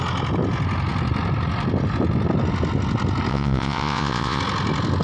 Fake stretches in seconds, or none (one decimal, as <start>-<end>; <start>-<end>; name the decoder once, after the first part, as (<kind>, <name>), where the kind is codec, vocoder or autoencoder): 3.3-4.4 (vocoder, Vocos)